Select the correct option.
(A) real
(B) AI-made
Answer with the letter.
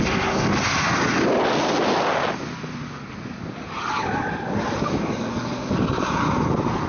A